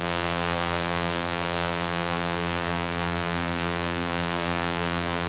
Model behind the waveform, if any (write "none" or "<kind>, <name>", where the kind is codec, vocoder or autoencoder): vocoder, BigVGAN v2